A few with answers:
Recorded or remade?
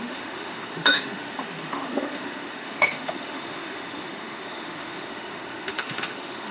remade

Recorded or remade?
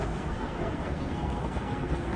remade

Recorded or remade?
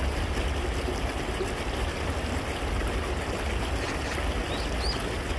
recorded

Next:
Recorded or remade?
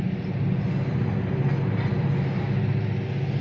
recorded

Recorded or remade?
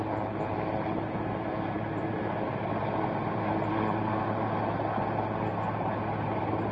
recorded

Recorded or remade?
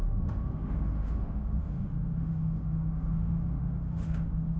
remade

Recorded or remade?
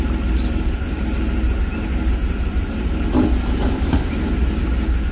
recorded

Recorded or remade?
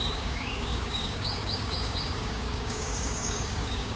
remade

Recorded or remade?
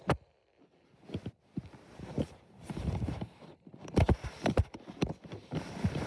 recorded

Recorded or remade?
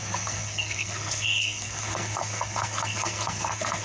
remade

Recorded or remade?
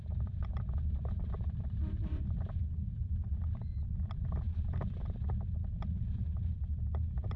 remade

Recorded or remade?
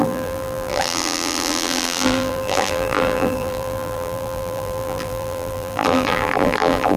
remade